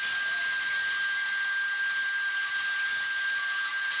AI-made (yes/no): no